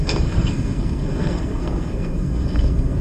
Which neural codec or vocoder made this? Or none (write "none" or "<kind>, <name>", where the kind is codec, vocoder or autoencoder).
codec, SNAC